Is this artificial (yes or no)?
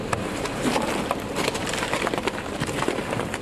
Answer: no